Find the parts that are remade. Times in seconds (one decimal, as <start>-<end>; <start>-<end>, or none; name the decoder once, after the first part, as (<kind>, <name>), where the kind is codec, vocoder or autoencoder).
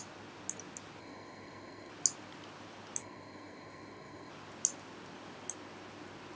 1.0-1.9 (codec, SNAC); 3.0-4.3